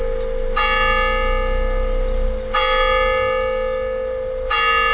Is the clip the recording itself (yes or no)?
yes